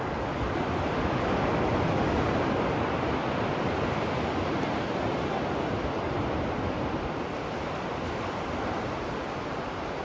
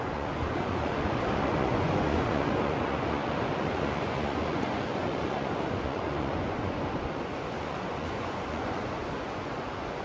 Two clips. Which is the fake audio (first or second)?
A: second